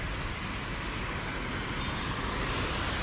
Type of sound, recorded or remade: recorded